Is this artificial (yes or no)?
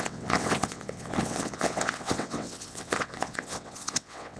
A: yes